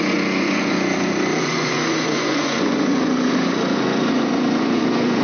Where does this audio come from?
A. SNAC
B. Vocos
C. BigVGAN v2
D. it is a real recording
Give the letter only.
B